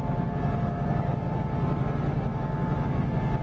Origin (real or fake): real